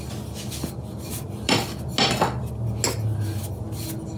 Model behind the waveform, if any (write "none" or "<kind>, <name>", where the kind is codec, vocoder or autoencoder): none